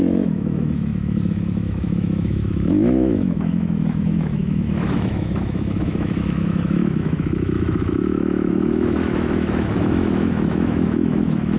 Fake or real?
fake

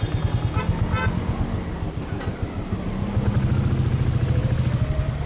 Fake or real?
real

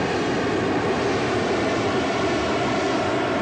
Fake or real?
real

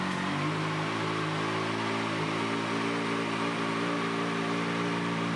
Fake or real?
real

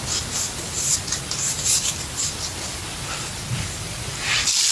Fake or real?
real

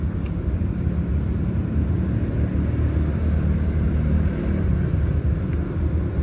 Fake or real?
real